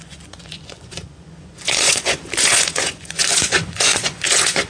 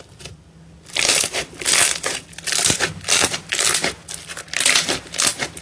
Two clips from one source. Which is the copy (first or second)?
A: first